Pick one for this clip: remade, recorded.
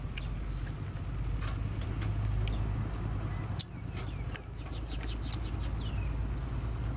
recorded